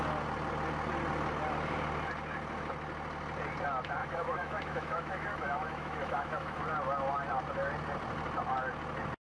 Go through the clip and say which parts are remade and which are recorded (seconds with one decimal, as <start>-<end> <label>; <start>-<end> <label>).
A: 0.0-4.0 recorded; 4.0-6.6 remade; 6.6-9.3 recorded